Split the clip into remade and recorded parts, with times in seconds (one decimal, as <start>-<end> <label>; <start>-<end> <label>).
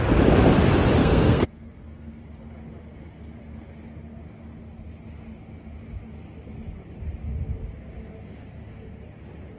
0.0-1.0 recorded; 1.0-2.2 remade; 2.2-9.6 recorded